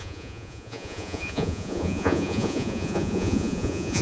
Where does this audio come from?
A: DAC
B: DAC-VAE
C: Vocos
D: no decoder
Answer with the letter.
C